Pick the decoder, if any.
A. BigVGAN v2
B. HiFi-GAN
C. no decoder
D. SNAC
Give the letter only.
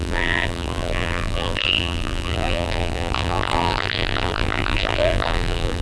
A